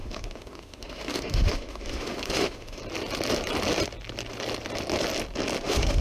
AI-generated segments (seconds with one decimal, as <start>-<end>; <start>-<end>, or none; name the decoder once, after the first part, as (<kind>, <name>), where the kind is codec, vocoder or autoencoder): 0.0-2.8 (autoencoder, DAC-VAE); 5.6-6.0

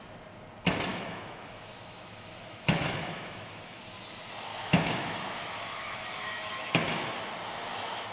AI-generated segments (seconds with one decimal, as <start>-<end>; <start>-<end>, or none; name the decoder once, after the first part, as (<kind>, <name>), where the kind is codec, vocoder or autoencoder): 0.9-3.8 (autoencoder, DAC-VAE); 4.5-7.2

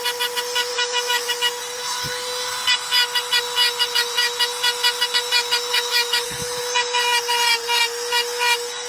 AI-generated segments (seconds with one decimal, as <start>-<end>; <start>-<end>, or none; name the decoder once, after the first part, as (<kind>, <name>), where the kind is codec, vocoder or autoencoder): 0.7-1.3 (autoencoder, DAC-VAE); 5.7-6.6